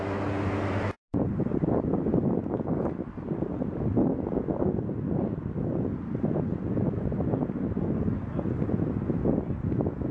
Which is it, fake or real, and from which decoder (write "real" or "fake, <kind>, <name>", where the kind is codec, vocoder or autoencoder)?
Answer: real